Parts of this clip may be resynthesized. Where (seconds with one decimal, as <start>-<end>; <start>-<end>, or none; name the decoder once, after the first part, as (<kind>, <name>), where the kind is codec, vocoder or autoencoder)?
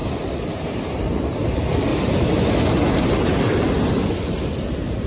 1.0-1.9 (vocoder, BigVGAN v2); 2.9-3.5; 4.1-5.1